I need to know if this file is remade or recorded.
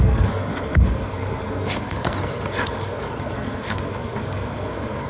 remade